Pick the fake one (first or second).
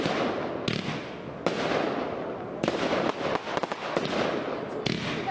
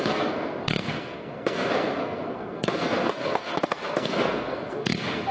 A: second